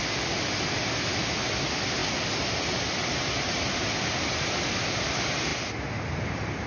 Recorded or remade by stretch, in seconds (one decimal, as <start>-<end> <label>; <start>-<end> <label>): 0.0-6.7 recorded